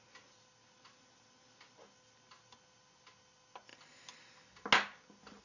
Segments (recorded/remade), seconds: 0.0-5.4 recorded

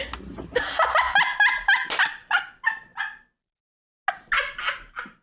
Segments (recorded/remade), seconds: 0.0-5.2 recorded

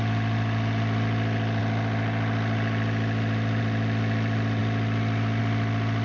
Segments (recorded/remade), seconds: 0.0-6.0 recorded